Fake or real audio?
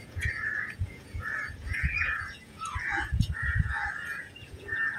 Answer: fake